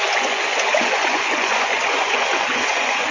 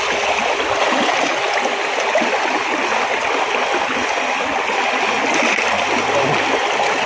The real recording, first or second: second